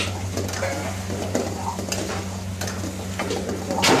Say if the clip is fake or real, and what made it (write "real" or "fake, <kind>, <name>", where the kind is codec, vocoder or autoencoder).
real